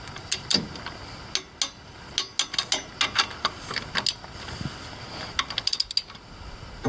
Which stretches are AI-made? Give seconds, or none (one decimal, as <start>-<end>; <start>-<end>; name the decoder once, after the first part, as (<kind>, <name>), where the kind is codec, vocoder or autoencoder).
none